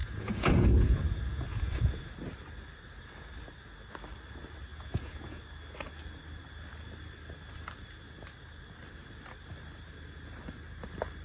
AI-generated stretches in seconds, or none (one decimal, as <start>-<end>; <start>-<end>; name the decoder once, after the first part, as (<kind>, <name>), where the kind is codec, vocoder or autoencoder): 0.0-2.1 (vocoder, Vocos); 4.7-5.4